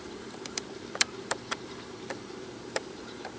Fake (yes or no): yes